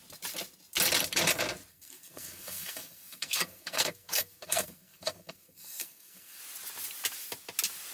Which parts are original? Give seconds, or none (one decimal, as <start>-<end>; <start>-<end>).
0.0-1.7; 6.4-7.9